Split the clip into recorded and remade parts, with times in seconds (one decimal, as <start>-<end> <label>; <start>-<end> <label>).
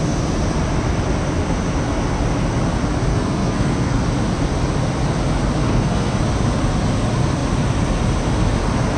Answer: 0.0-3.1 recorded; 3.1-4.0 remade; 4.0-5.6 recorded; 5.6-6.2 remade; 6.2-9.0 recorded